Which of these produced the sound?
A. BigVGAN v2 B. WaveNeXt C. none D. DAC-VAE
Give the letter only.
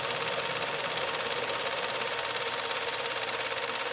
A